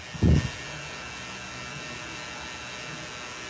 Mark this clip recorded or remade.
recorded